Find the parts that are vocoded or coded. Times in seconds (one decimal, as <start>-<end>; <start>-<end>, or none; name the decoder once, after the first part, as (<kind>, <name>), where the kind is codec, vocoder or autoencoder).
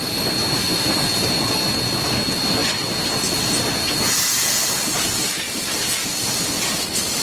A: none